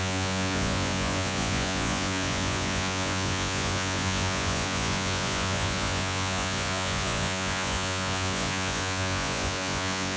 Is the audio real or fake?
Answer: fake